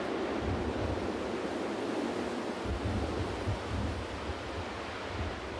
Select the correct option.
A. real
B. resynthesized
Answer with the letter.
A